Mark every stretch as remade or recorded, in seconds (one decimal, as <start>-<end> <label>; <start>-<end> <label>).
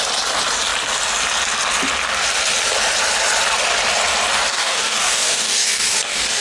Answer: 0.0-4.5 recorded; 4.5-6.4 remade